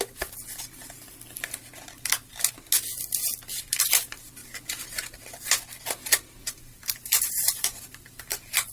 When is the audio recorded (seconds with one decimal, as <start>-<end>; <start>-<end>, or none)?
0.0-6.4